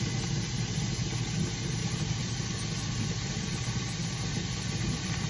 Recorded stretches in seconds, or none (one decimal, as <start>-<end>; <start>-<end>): 0.0-5.3